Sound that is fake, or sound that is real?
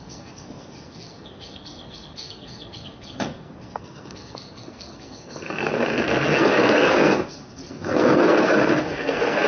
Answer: fake